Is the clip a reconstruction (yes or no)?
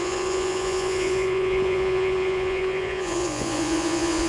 yes